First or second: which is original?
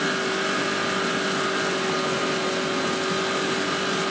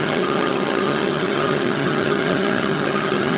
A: first